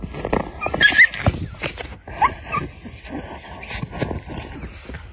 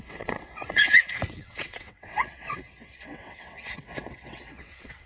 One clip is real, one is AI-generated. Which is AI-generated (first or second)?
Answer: second